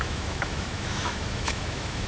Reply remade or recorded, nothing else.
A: remade